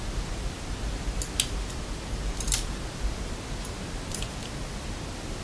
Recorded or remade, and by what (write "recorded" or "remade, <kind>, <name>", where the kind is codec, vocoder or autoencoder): recorded